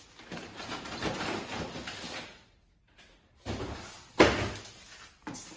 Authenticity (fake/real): real